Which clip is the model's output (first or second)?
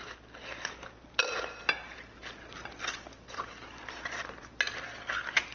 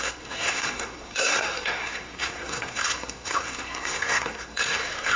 second